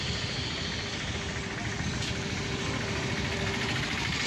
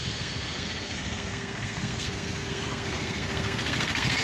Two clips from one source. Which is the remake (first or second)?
second